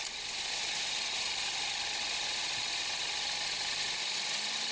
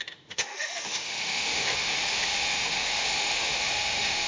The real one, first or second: first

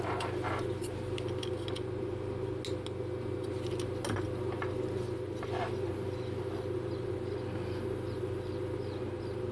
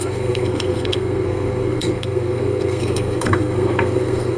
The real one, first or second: first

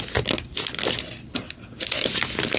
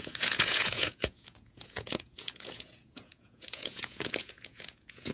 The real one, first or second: first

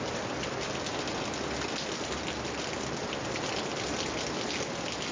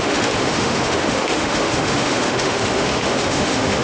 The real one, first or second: first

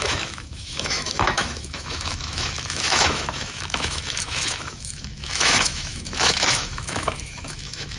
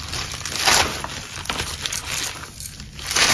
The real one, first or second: second